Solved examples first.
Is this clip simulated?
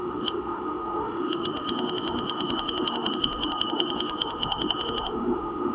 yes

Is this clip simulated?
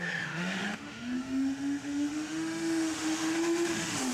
yes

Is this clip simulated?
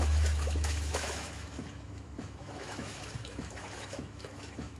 yes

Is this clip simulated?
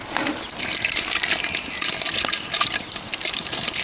no